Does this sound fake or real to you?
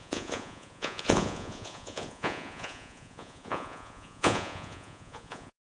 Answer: fake